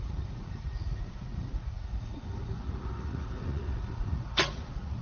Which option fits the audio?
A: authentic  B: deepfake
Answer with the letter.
B